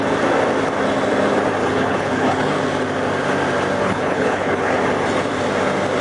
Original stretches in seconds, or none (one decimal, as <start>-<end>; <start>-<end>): 0.0-1.6; 2.6-3.8; 4.8-6.0